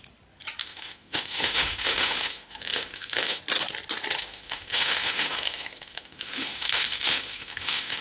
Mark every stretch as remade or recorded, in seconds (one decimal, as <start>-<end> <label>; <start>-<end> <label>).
0.0-0.6 recorded; 0.6-3.4 remade; 3.4-4.2 recorded; 4.2-8.0 remade

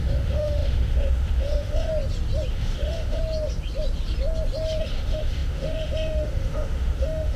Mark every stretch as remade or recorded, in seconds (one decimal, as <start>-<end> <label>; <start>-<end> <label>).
0.0-1.9 remade; 1.9-2.5 recorded; 2.5-3.2 remade; 3.2-4.8 recorded; 4.8-7.4 remade

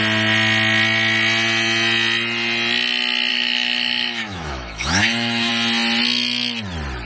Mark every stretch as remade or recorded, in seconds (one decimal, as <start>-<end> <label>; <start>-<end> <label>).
0.0-3.3 recorded; 3.3-5.5 remade; 5.5-7.1 recorded

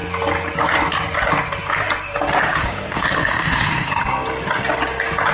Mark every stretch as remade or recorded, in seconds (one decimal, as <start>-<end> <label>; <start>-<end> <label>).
0.0-2.4 recorded; 2.4-3.9 remade; 3.9-5.3 recorded

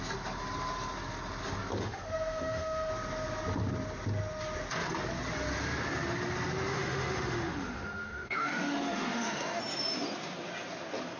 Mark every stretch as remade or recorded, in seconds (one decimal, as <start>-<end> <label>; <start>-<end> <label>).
0.0-1.8 recorded; 1.8-2.9 remade; 2.9-6.7 recorded; 6.7-9.6 remade; 9.6-11.2 recorded

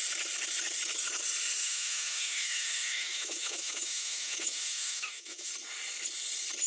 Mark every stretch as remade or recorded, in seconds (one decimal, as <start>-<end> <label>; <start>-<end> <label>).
0.0-1.6 recorded; 1.6-5.5 remade; 5.5-6.7 recorded

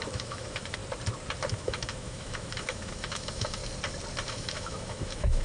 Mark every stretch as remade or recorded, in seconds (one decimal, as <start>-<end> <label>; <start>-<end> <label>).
0.0-0.8 remade; 0.8-1.5 recorded; 1.5-3.6 remade; 3.6-4.3 recorded; 4.3-5.4 remade